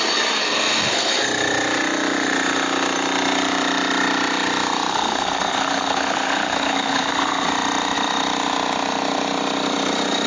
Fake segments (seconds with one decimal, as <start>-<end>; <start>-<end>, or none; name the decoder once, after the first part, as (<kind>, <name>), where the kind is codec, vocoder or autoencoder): 0.4-1.1 (codec, SNAC); 4.9-7.5